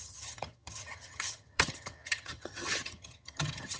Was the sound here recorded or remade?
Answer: remade